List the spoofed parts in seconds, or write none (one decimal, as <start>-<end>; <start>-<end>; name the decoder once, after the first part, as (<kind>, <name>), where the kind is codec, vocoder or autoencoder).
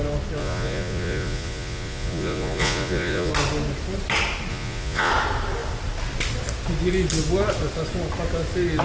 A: 0.4-3.3 (vocoder, Vocos); 4.5-5.1